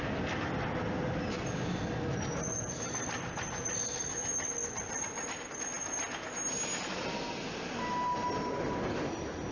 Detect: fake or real real